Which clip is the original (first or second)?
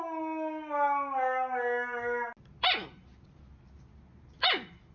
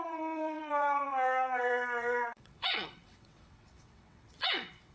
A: first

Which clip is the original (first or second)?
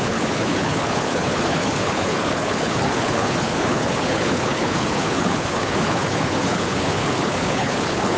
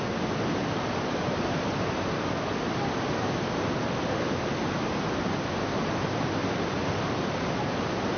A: second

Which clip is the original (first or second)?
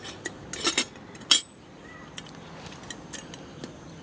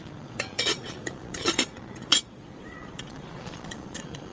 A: first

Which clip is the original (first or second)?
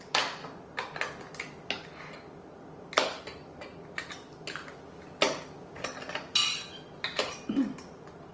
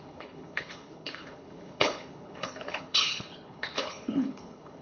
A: first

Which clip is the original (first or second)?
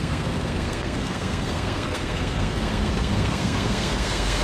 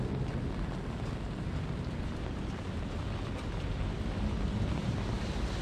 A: second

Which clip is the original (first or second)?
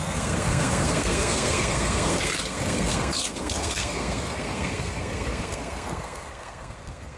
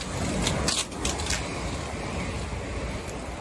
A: second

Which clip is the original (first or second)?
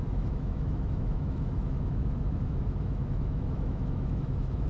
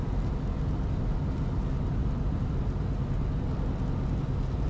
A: second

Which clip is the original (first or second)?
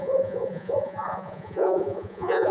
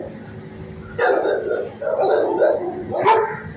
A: second